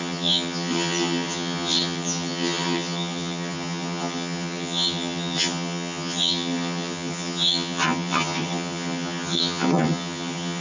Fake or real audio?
fake